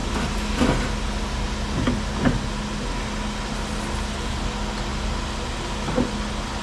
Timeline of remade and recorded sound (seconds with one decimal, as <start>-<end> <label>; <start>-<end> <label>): 0.0-6.6 recorded